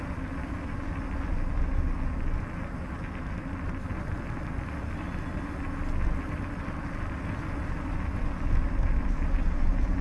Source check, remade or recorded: recorded